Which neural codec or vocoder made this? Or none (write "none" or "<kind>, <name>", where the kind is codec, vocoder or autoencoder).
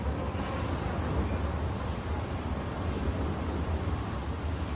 none